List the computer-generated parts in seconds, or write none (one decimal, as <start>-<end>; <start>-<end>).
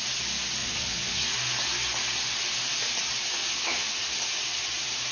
0.6-1.2; 3.4-3.9